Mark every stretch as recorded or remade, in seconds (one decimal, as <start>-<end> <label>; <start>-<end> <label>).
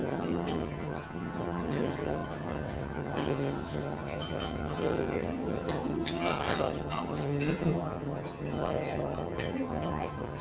0.0-10.4 remade